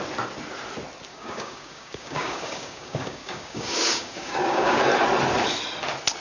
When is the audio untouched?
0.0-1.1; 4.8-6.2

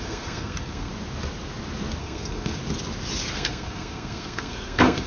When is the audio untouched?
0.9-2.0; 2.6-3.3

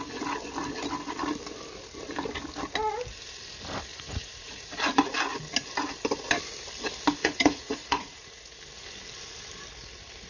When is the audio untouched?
0.0-3.9; 4.7-7.2; 8.6-10.3

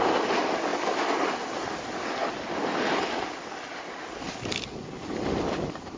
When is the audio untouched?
0.0-6.0

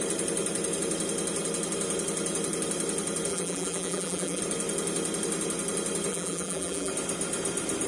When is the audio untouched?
0.0-3.3; 4.4-6.1; 6.9-7.9

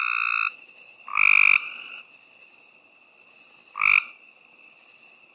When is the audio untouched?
0.0-5.3

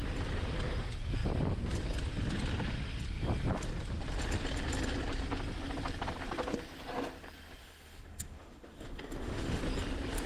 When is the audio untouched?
0.0-7.6; 9.6-10.3